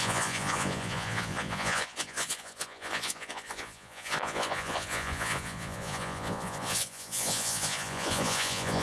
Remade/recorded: remade